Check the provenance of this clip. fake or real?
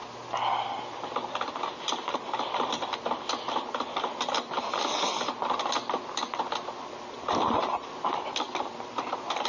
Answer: real